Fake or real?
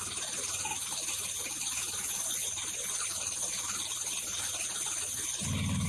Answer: real